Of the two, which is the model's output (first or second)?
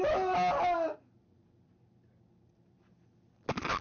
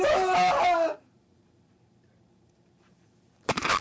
second